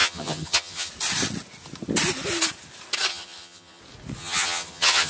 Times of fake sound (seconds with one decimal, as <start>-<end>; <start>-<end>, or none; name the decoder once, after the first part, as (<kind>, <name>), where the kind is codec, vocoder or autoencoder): 0.0-0.9 (vocoder, HiFi-GAN); 3.1-3.8; 4.2-5.1